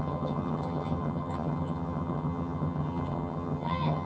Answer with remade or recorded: remade